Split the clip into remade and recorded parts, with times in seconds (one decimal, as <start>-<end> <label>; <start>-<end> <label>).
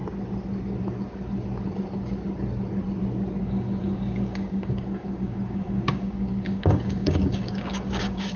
0.0-3.4 recorded; 3.4-8.4 remade